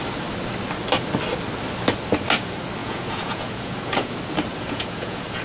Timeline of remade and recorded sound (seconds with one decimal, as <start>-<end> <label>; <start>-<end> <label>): 0.0-2.8 recorded; 2.8-4.1 remade; 4.1-4.5 recorded; 4.5-5.4 remade